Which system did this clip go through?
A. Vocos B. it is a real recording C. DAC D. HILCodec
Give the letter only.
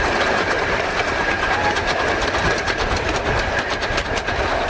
B